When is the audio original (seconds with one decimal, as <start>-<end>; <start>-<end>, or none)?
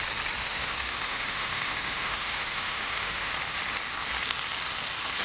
0.0-0.4; 3.3-5.2